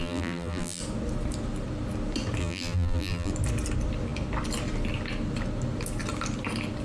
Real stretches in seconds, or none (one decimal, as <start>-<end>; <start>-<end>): 0.8-2.4; 3.3-6.8